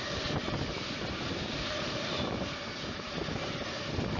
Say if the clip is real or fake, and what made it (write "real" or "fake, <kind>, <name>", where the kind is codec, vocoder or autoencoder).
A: real